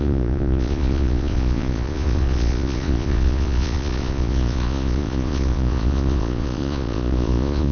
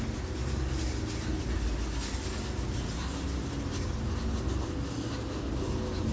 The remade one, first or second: first